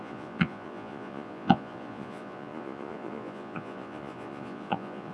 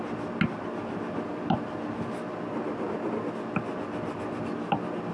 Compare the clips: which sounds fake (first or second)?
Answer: first